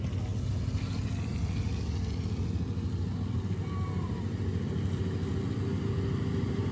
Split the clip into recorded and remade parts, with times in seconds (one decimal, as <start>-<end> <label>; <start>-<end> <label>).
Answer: 0.0-6.7 recorded